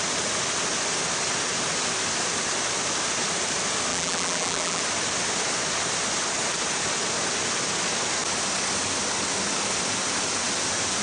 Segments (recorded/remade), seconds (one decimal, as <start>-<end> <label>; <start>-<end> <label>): 0.0-3.9 recorded; 3.9-4.8 remade; 4.8-11.0 recorded

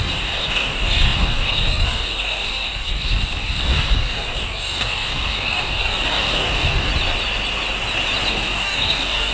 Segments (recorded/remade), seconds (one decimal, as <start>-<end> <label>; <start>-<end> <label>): 0.0-6.9 remade; 6.9-8.3 recorded; 8.3-9.3 remade

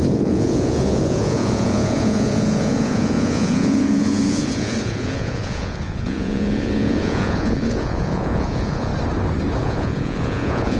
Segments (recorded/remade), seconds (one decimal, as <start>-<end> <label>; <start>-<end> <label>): 0.0-8.9 remade; 8.9-9.6 recorded; 9.6-10.8 remade

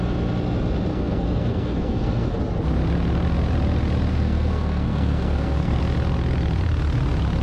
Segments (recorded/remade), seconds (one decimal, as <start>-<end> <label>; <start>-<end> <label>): 0.0-0.9 recorded; 0.9-2.4 remade; 2.4-4.1 recorded; 4.1-5.8 remade; 5.8-7.4 recorded

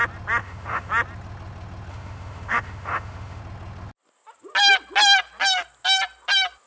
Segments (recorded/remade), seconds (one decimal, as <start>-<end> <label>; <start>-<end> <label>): 0.0-0.4 recorded; 0.4-0.9 remade; 0.9-1.9 recorded; 1.9-3.4 remade; 3.4-6.7 recorded

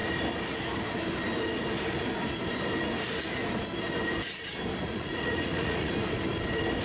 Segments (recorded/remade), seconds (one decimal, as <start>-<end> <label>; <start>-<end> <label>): 0.0-4.8 recorded; 4.8-5.9 remade; 5.9-6.8 recorded

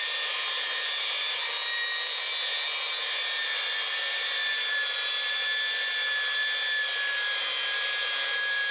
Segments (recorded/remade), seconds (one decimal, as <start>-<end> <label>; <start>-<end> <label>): 0.0-8.7 recorded